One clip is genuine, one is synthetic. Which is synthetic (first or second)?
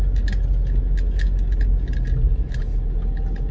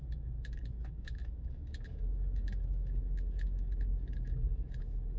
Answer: second